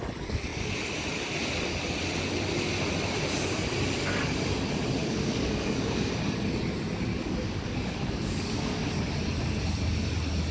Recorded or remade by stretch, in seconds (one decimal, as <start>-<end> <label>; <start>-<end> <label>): 0.0-5.0 recorded; 5.0-6.1 remade; 6.1-7.1 recorded; 7.1-8.9 remade; 8.9-10.5 recorded